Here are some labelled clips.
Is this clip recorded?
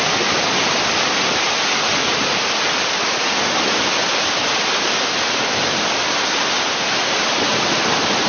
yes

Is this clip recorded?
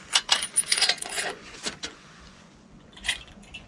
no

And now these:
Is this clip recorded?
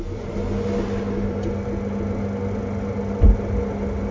yes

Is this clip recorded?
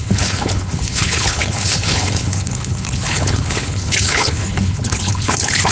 no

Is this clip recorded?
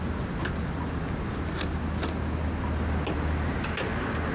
yes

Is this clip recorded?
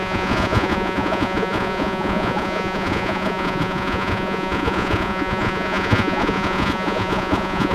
no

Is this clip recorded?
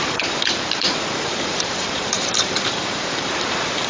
no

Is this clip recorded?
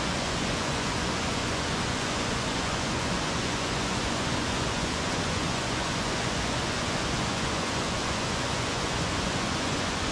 no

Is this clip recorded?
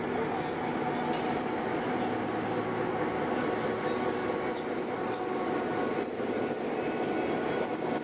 yes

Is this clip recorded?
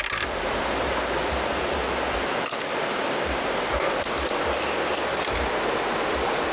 yes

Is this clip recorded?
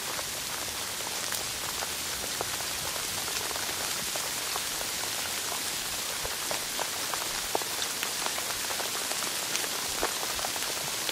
yes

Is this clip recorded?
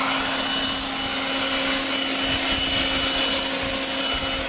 yes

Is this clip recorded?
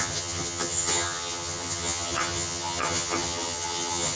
no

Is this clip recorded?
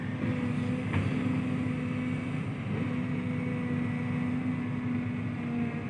yes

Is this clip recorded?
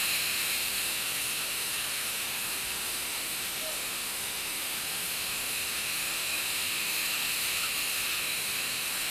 no